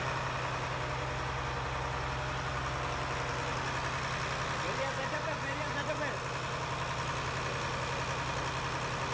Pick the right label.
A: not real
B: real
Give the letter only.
B